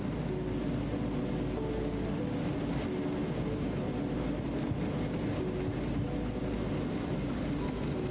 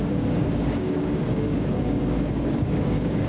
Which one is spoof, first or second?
second